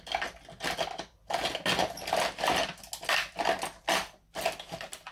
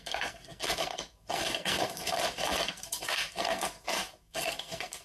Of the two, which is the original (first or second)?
first